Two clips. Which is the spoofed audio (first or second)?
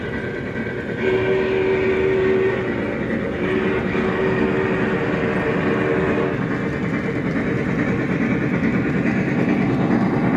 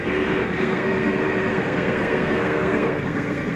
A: second